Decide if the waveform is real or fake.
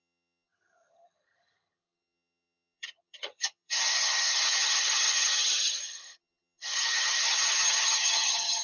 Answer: fake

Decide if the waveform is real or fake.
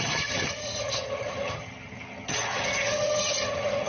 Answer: fake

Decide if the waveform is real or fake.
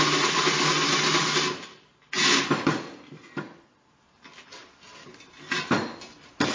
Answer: real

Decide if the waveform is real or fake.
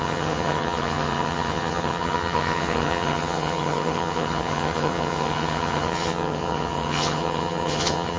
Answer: fake